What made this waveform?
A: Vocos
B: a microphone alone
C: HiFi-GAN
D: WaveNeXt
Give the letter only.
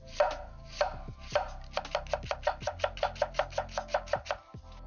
B